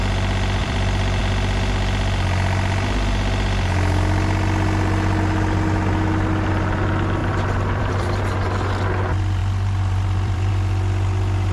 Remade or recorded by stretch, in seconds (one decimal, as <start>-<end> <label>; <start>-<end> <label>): 0.0-0.6 recorded; 0.6-1.2 remade; 1.2-7.2 recorded; 7.2-8.2 remade; 8.2-9.4 recorded; 9.4-10.5 remade; 10.5-11.5 recorded